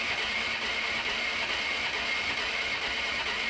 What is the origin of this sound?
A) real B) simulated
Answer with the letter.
A